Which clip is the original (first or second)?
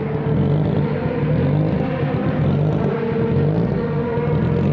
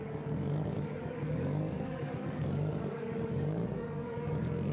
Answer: first